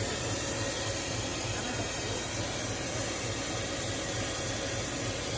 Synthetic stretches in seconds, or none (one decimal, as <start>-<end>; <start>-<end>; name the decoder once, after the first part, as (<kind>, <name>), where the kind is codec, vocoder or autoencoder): none